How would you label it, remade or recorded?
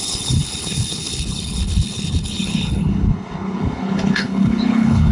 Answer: remade